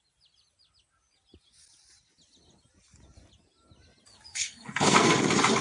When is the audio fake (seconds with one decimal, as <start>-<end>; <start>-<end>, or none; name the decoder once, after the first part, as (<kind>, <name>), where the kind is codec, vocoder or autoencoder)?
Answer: 4.3-5.1 (codec, SNAC)